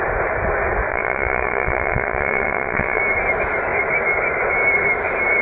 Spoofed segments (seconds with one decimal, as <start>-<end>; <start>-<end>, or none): 0.9-3.0